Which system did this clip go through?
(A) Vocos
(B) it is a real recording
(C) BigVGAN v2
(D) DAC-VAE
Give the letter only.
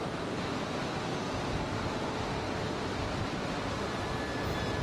B